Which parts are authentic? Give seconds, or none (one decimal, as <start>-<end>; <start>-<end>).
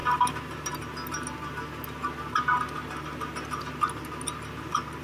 0.0-5.0